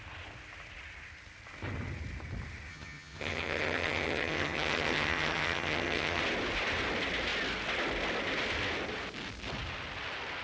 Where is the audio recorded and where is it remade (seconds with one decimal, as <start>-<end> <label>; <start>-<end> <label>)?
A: 0.0-2.7 recorded; 2.7-6.2 remade; 6.2-10.4 recorded